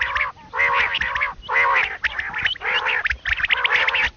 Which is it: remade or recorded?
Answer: recorded